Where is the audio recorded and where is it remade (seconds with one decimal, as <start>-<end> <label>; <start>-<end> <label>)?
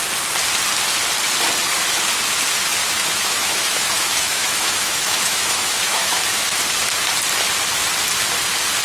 0.0-2.8 recorded; 2.8-6.2 remade; 6.2-8.8 recorded